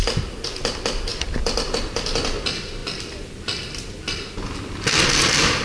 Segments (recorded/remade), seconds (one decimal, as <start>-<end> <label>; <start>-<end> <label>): 0.0-5.6 recorded